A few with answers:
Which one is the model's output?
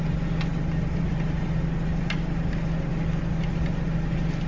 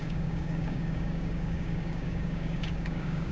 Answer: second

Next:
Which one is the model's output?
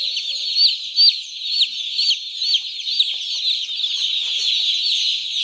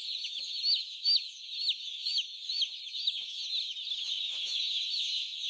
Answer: second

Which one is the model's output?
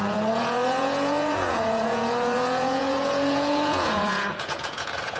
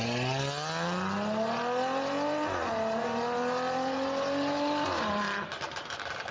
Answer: first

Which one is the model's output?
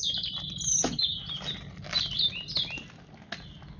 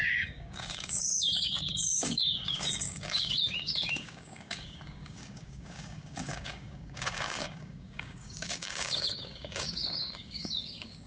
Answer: second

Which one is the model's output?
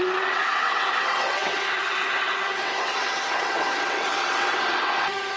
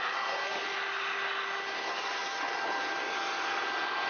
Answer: first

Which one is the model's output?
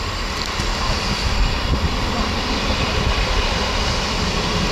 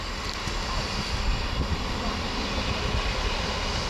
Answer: first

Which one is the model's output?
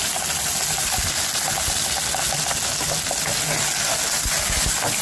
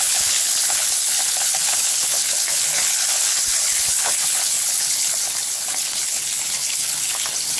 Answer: second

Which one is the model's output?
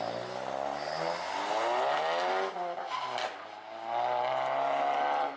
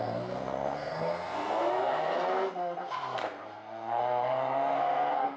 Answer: second